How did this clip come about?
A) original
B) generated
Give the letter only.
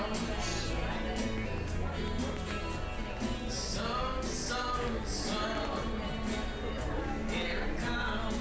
A